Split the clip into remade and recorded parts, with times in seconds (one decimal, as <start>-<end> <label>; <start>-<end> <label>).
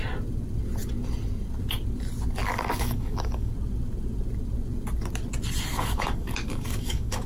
0.0-2.5 recorded; 2.5-3.5 remade; 3.5-5.7 recorded; 5.7-7.3 remade